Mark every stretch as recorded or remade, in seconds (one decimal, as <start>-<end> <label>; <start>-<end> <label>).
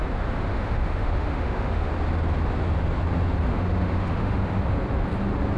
0.0-0.5 recorded; 0.5-1.9 remade; 1.9-3.5 recorded; 3.5-4.6 remade; 4.6-5.6 recorded